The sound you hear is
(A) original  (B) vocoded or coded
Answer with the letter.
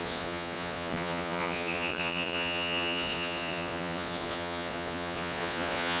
B